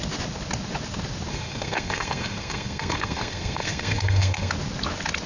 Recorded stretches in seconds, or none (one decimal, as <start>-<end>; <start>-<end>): 0.0-1.3; 4.5-5.3